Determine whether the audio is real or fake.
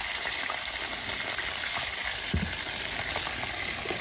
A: real